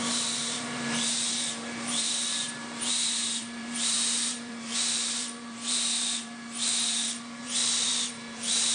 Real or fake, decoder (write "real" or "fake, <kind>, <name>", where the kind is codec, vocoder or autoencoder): fake, vocoder, BigVGAN v2